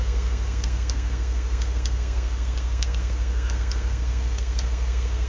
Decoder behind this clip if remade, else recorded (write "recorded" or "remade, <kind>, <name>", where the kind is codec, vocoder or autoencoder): remade, codec, SNAC